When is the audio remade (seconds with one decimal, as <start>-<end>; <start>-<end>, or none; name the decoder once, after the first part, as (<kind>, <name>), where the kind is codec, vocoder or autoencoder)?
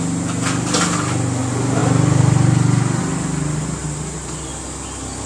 none